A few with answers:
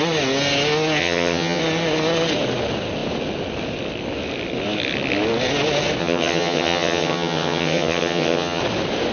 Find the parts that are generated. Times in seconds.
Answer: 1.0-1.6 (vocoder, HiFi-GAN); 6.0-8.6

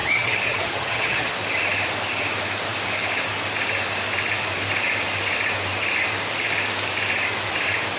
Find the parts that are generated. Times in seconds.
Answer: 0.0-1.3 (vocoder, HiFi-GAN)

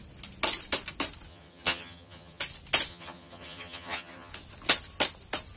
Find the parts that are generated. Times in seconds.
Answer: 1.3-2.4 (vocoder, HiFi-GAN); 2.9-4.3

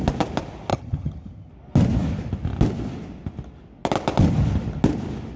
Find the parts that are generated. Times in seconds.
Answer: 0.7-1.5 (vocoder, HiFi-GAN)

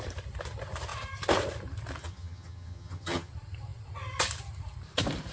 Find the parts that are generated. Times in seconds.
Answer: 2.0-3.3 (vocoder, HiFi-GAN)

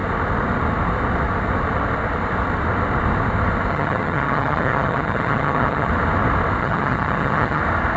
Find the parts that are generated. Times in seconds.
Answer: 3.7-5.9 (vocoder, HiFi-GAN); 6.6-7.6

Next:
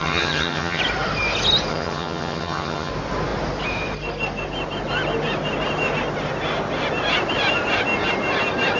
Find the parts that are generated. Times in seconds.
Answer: 0.0-0.8 (vocoder, HiFi-GAN); 1.7-2.9

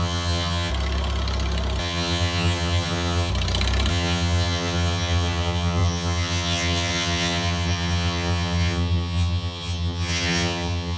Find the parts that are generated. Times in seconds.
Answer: 0.0-0.7 (vocoder, HiFi-GAN); 1.8-3.3; 3.9-11.0